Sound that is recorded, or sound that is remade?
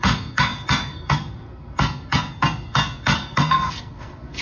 remade